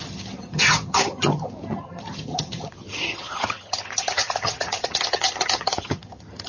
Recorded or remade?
remade